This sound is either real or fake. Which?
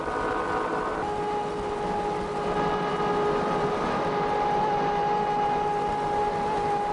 real